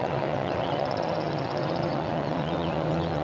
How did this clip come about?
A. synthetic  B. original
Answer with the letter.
A